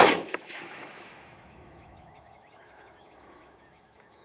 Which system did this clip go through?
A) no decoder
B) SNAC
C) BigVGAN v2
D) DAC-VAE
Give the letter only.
D